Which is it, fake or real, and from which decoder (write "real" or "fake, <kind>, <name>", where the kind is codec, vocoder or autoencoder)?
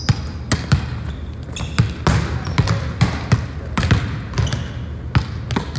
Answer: real